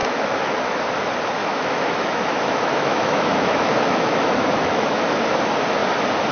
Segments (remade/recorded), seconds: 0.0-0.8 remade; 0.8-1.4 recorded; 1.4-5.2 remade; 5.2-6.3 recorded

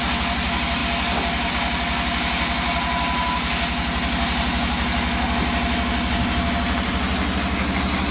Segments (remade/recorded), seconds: 0.0-8.1 recorded

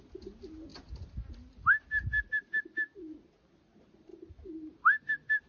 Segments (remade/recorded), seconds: 0.0-5.5 recorded

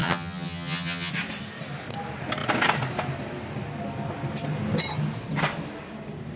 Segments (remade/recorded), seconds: 0.0-1.1 remade; 1.1-6.4 recorded

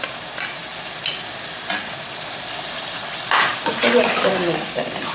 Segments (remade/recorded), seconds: 0.0-5.1 recorded